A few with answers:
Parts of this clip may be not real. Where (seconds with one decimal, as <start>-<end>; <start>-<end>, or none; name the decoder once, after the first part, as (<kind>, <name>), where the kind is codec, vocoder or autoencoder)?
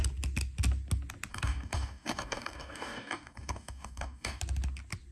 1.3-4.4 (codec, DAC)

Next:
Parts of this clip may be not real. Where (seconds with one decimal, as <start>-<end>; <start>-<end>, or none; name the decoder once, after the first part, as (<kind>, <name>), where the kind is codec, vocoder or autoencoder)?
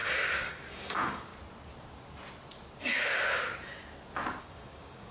0.0-1.3 (codec, DAC); 4.4-5.1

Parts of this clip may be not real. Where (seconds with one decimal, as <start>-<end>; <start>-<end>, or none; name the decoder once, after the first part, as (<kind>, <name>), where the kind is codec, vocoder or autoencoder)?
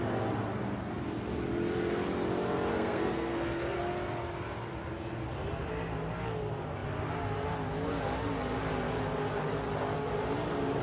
2.7-3.8 (codec, SNAC)